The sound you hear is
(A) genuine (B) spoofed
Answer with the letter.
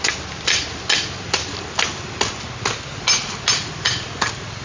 A